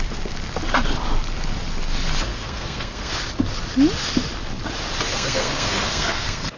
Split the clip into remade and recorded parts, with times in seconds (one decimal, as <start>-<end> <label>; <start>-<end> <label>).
0.0-2.3 recorded; 2.3-3.1 remade; 3.1-5.1 recorded; 5.1-6.6 remade